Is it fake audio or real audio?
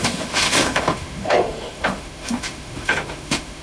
fake